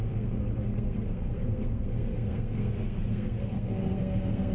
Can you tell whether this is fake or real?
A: fake